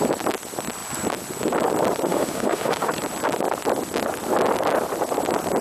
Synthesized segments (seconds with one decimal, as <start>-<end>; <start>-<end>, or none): 2.1-2.9